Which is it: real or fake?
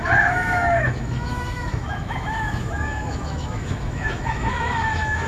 fake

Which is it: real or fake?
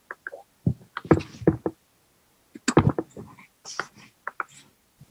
real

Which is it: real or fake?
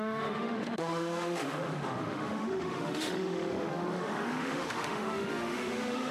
fake